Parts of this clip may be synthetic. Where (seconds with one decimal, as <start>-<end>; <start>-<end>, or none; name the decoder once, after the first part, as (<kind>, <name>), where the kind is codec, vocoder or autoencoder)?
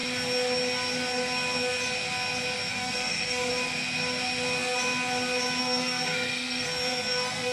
2.7-3.5 (codec, SNAC); 5.6-7.5